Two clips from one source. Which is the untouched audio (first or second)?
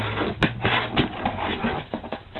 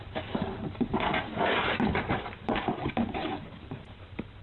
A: first